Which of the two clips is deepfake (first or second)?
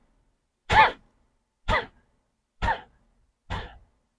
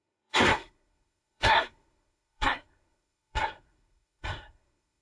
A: second